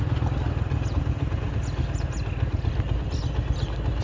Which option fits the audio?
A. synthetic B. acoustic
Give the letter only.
B